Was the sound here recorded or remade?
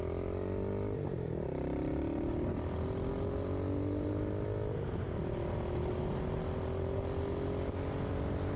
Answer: recorded